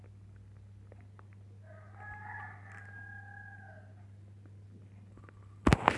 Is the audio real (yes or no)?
yes